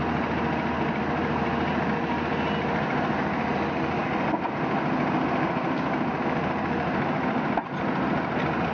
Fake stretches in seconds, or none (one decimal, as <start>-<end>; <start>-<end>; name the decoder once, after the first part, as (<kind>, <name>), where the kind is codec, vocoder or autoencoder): none